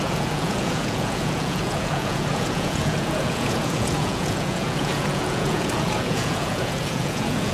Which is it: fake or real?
fake